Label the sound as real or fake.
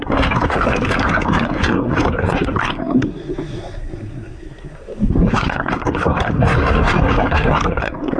fake